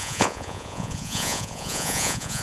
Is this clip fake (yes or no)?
yes